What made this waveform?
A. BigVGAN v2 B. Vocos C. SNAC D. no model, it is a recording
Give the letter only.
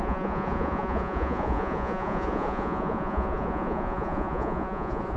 B